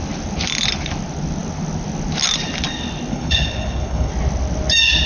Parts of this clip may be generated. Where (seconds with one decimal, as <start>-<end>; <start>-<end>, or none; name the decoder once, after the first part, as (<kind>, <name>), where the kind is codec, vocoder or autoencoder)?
3.1-4.1 (codec, HILCodec)